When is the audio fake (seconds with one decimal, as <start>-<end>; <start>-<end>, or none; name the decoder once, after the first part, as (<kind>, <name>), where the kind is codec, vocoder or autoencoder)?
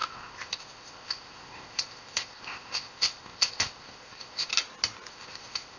0.0-4.5 (codec, ZipCodec); 5.1-5.8